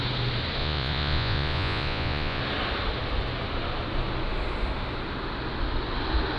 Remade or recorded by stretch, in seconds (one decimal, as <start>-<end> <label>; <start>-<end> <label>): 0.0-0.6 recorded; 0.6-2.4 remade; 2.4-6.4 recorded